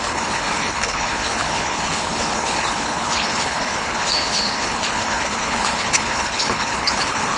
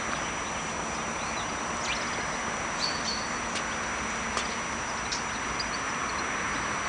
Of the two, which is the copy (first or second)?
first